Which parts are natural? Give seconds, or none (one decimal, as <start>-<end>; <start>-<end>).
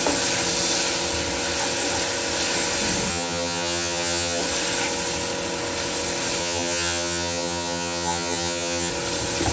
0.0-3.1; 4.4-6.4; 8.9-9.5